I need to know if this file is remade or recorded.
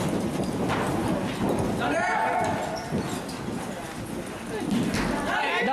recorded